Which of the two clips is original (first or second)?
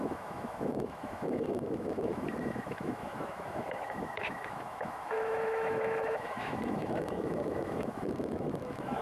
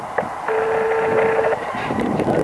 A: second